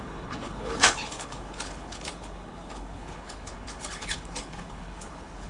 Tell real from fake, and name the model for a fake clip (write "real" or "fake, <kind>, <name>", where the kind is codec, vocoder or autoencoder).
fake, codec, HILCodec